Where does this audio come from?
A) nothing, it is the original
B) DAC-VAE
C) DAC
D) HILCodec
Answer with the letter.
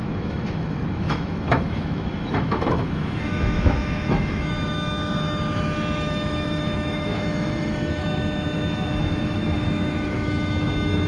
B